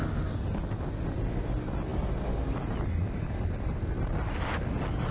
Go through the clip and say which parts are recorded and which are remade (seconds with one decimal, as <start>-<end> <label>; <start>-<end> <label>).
0.0-5.1 recorded